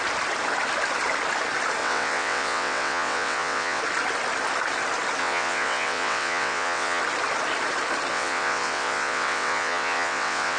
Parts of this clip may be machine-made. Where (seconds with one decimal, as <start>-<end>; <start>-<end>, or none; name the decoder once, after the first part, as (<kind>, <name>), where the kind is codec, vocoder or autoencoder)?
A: 1.8-3.8 (vocoder, WaveNeXt); 5.2-7.0; 8.1-10.6

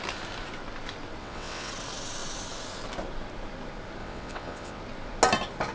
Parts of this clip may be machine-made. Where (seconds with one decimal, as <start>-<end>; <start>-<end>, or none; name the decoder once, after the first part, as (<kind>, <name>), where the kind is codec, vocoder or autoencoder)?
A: 1.2-1.7 (vocoder, WaveNeXt); 4.0-4.8

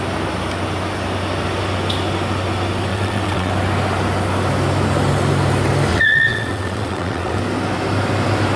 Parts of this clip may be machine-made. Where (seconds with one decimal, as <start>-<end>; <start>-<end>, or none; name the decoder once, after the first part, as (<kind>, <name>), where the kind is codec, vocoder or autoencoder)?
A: 2.9-3.5 (vocoder, WaveNeXt); 5.9-7.4

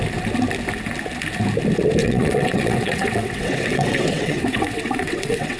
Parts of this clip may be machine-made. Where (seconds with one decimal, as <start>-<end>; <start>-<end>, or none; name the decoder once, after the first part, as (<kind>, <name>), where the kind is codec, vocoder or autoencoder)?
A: 2.0-5.6 (vocoder, WaveNeXt)

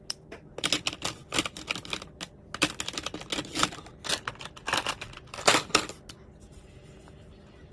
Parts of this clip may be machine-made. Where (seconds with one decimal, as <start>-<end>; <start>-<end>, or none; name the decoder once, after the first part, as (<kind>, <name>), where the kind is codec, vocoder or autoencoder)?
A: none

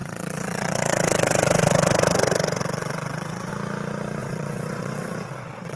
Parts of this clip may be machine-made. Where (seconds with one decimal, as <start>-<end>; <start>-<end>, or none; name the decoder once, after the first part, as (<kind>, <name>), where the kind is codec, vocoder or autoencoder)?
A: 0.0-3.5 (vocoder, WaveNeXt); 4.2-5.8